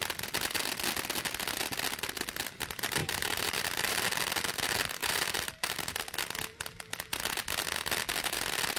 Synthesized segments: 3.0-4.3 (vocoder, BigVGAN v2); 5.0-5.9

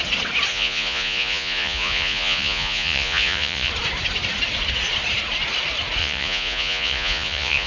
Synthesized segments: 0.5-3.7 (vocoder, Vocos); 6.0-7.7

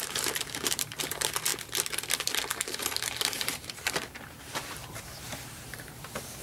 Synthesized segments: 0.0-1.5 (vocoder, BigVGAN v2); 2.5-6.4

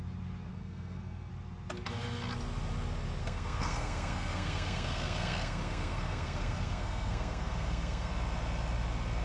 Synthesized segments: 0.5-1.3 (codec, SNAC); 3.2-8.1

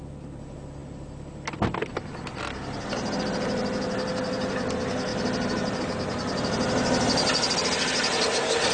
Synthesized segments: none

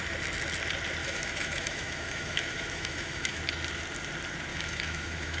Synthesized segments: 1.0-3.4 (autoencoder, DAC-VAE); 4.5-5.4

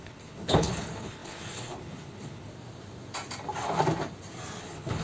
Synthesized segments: 0.0-2.5 (codec, HILCodec); 4.6-5.0